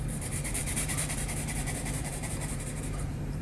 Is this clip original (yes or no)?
no